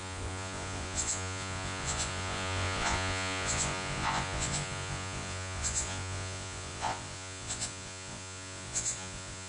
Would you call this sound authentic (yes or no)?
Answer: no